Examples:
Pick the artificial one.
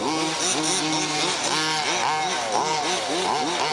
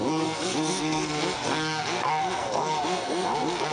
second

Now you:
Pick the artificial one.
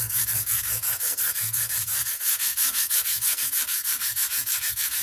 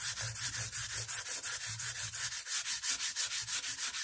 first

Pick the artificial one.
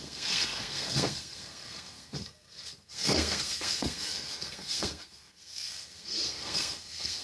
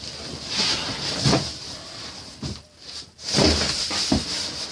first